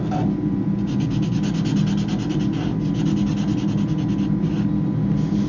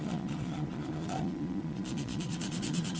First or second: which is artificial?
second